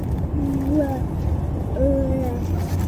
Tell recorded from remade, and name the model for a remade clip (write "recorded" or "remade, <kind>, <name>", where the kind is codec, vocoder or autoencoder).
recorded